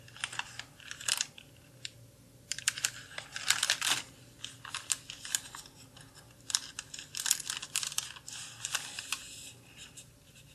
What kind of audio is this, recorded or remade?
recorded